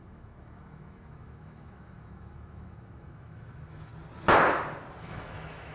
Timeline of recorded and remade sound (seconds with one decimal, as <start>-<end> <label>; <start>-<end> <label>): 0.0-3.9 remade; 3.9-5.0 recorded; 5.0-5.7 remade